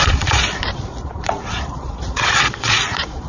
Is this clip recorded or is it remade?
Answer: remade